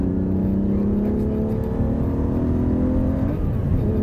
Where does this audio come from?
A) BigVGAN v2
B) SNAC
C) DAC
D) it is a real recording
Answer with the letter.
D